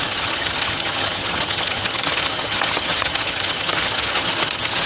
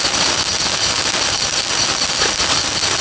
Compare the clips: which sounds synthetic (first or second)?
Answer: first